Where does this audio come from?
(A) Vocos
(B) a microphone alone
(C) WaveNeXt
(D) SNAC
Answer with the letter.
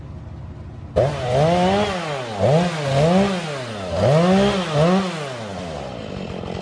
B